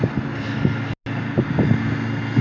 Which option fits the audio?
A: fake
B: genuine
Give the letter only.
B